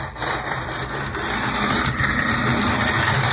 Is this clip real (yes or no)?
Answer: yes